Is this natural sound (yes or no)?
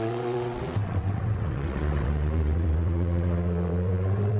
no